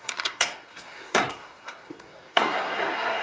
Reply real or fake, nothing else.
fake